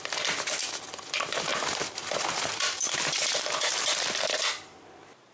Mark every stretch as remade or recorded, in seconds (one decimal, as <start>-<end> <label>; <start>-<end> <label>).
0.0-1.5 recorded; 1.5-4.4 remade; 4.4-5.3 recorded